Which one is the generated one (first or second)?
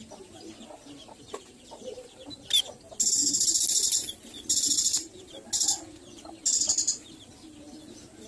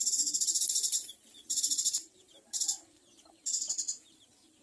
second